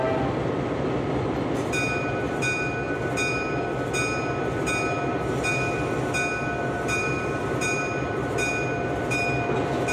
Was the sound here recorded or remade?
recorded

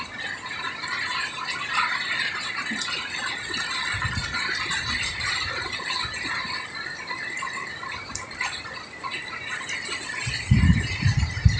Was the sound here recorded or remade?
recorded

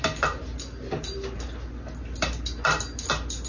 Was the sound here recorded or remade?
recorded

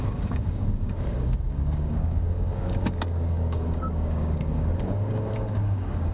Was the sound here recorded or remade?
remade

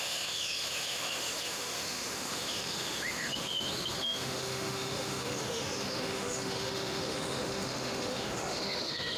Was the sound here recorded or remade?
remade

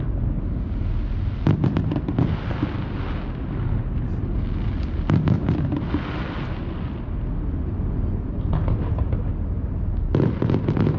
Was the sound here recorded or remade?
recorded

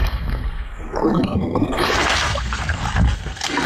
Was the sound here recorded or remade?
remade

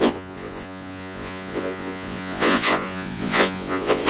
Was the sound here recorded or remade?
remade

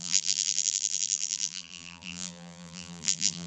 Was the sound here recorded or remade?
remade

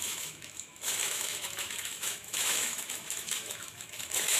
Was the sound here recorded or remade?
remade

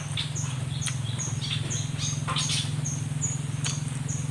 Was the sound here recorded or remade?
recorded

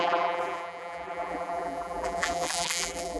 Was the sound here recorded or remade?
remade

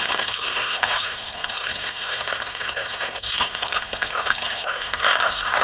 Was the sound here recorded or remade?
remade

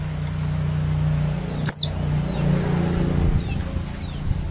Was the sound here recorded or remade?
recorded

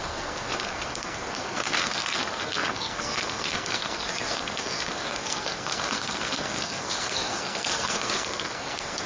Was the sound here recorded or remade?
remade